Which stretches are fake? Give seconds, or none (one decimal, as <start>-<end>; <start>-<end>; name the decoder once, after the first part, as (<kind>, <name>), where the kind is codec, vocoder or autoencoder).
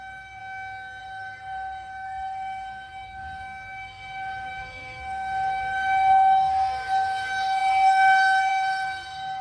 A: 0.0-0.4 (codec, SNAC); 1.0-9.4